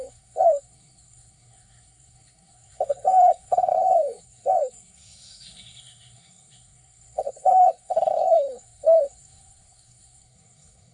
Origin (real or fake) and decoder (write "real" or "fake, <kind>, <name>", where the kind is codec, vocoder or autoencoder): fake, codec, SNAC